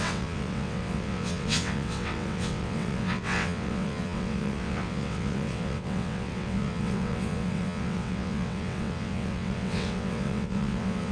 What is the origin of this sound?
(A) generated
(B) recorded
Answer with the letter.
A